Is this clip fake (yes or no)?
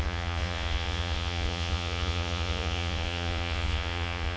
yes